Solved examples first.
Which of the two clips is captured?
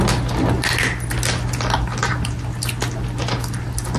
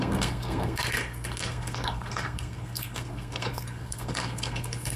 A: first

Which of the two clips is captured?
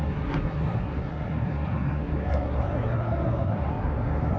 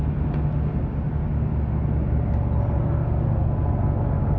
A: second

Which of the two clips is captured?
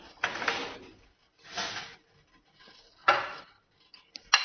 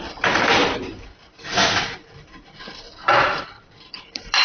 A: first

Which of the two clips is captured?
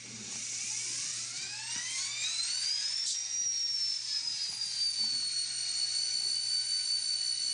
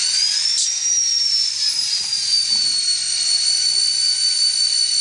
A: first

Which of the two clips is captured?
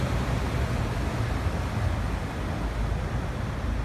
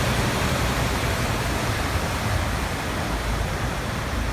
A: first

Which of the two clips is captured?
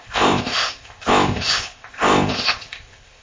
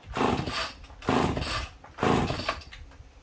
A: second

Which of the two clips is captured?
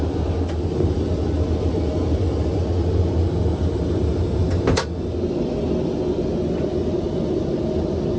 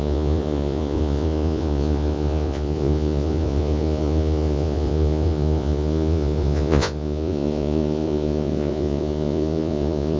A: first